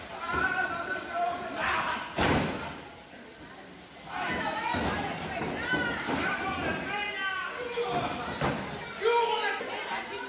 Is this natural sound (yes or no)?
yes